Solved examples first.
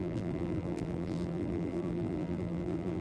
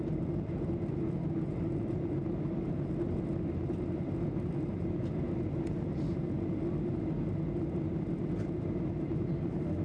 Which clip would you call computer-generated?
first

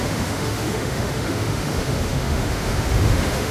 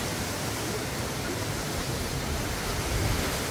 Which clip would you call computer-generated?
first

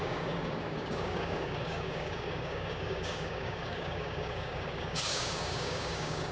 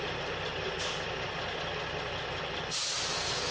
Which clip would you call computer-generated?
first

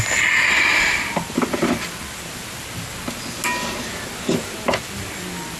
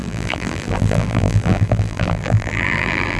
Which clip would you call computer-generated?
second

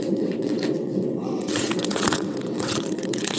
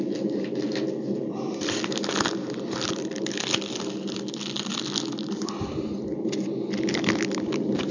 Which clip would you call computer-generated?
first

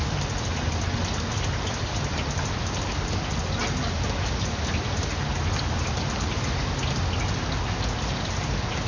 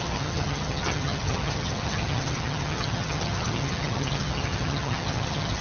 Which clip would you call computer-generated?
second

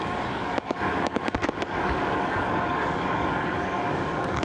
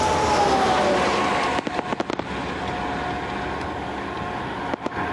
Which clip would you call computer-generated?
first